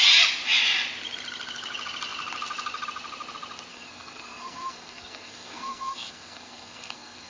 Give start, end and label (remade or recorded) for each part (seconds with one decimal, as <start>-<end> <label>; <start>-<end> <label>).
0.0-3.7 recorded; 3.7-7.3 remade